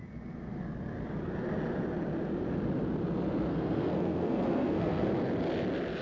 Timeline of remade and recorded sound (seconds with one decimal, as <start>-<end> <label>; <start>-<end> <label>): 0.0-3.5 recorded; 3.5-5.1 remade; 5.1-6.0 recorded